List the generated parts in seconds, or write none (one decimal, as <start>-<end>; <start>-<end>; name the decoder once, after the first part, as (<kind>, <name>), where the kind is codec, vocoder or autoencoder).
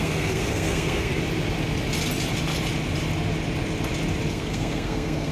0.0-1.1 (codec, SNAC); 4.3-5.3